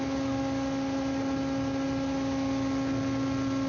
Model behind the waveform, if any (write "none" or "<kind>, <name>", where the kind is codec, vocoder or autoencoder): none